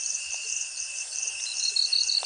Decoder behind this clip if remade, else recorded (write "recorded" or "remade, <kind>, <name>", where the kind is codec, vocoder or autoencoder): remade, vocoder, BigVGAN v2